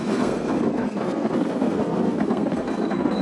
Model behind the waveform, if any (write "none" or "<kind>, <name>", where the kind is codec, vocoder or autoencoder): codec, SNAC